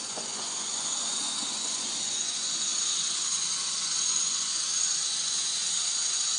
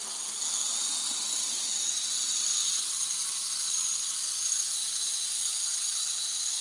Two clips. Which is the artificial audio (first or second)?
first